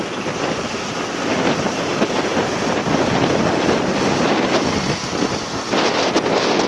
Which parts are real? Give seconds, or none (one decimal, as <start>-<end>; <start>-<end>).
0.0-6.7

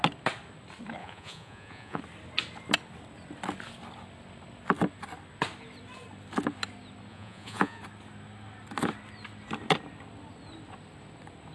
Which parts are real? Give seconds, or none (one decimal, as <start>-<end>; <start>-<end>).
0.0-1.0; 2.0-7.1; 7.8-11.5

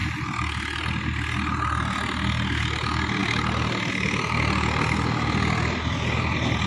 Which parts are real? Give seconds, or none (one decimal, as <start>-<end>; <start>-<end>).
0.0-6.7

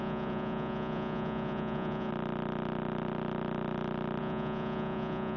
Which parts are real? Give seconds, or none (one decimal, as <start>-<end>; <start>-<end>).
2.1-4.2

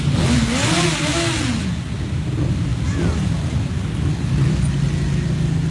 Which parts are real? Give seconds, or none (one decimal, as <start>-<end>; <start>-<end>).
0.0-5.7

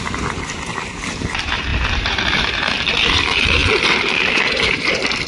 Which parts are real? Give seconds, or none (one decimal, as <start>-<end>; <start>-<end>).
none

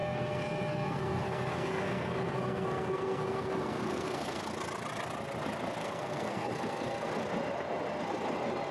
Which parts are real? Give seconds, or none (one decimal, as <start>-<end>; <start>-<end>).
4.4-5.8; 7.1-8.7